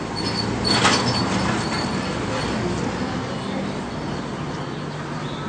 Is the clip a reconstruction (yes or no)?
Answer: no